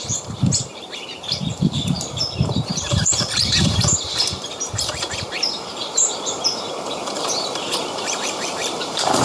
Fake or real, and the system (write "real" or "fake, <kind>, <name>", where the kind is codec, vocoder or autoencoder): fake, vocoder, BigVGAN v2